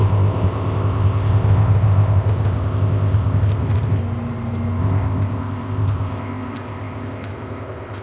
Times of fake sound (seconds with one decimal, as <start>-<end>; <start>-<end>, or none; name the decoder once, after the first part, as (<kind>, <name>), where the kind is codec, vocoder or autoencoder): 0.0-4.0 (codec, ZipCodec); 4.8-8.0